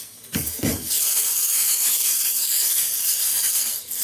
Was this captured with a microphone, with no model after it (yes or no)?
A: no